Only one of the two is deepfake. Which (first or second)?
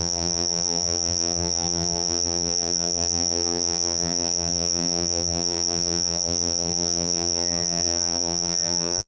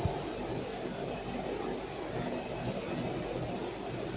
first